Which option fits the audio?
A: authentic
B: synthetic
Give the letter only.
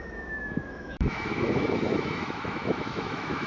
B